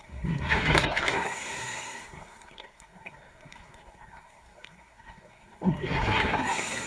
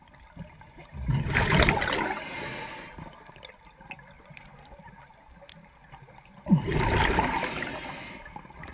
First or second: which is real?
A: second